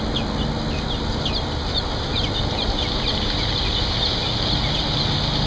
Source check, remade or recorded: recorded